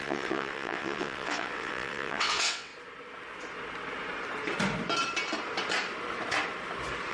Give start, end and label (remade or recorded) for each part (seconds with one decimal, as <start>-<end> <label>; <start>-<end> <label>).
0.0-2.7 remade; 2.7-7.1 recorded